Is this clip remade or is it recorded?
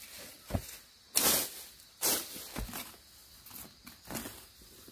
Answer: recorded